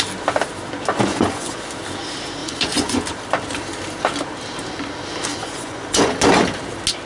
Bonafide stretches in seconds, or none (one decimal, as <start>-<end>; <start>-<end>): 0.0-1.1; 1.6-2.4; 3.0-5.3; 6.1-7.1